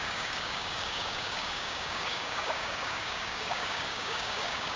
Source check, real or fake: fake